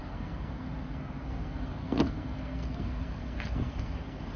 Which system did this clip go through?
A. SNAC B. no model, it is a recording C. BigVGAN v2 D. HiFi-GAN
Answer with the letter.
A